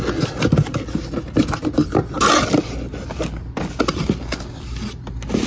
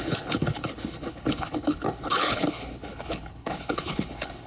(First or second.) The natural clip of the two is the first